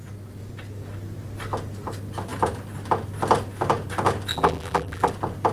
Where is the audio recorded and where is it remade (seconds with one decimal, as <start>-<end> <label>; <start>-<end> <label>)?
0.0-4.3 recorded; 4.3-5.1 remade; 5.1-5.5 recorded